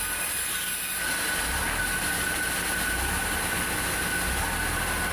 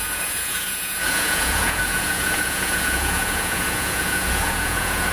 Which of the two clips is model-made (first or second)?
second